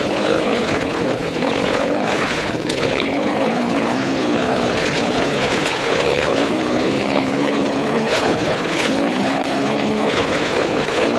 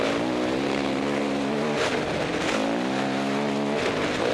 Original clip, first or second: second